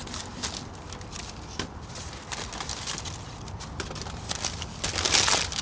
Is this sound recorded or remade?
recorded